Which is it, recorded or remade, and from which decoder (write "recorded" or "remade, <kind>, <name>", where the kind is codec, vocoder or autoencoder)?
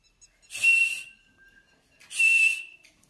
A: recorded